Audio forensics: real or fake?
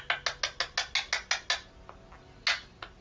real